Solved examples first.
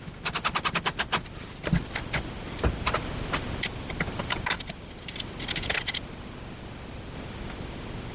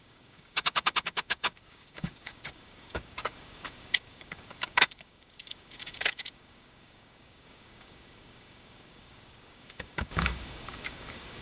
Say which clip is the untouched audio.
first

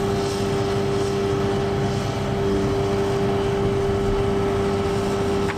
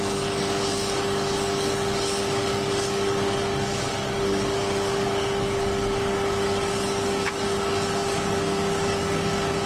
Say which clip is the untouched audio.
first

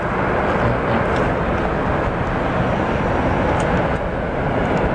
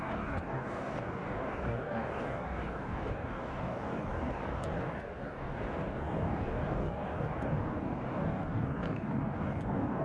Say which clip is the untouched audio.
first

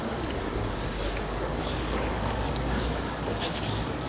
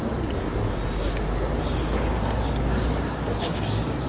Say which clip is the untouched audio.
second